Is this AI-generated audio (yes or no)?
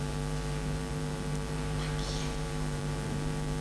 yes